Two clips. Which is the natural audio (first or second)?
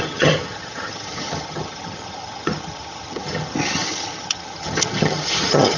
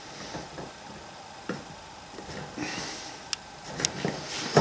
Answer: second